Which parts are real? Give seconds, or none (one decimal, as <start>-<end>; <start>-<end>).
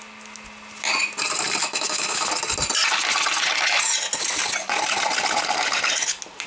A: 0.0-1.6; 2.3-6.5